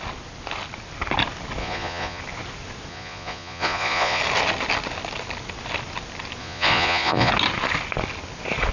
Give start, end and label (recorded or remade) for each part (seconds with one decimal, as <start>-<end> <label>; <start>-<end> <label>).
0.0-1.6 recorded; 1.6-2.2 remade; 2.2-2.9 recorded; 2.9-4.2 remade; 4.2-6.4 recorded; 6.4-7.3 remade; 7.3-8.7 recorded